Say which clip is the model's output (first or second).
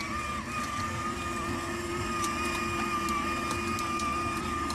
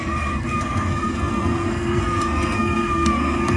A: second